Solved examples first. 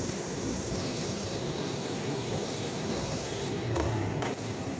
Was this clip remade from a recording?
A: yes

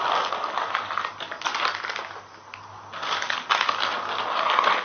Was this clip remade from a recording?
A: no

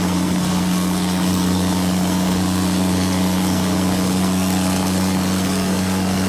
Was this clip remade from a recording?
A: yes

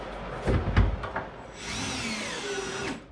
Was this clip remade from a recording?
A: no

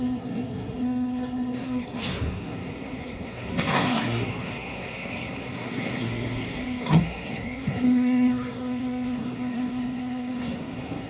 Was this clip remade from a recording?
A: yes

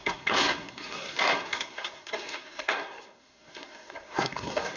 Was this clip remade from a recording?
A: yes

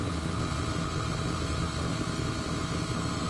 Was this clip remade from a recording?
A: no